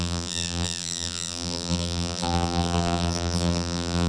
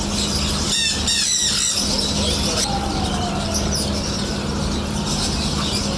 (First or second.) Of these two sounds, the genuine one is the second